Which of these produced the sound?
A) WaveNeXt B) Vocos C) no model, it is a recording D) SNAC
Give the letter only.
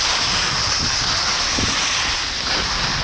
C